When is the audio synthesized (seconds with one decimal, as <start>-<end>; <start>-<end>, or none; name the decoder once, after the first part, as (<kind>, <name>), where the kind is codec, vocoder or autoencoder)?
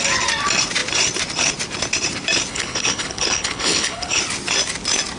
2.5-4.2 (codec, HILCodec)